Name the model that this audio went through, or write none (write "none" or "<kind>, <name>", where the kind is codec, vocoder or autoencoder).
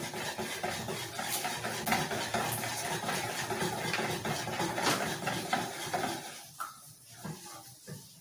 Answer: none